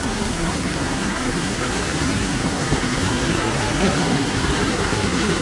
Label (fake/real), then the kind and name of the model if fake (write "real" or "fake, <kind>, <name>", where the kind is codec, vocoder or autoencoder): fake, codec, SNAC